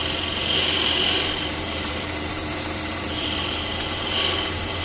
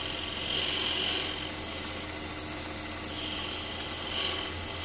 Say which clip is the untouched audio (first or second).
second